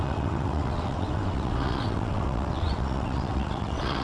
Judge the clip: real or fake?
fake